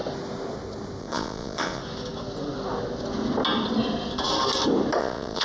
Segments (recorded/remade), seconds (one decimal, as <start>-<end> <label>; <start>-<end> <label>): 0.0-1.0 recorded; 1.0-1.8 remade; 1.8-5.0 recorded; 5.0-5.4 remade